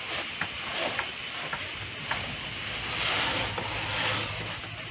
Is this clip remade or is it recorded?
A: recorded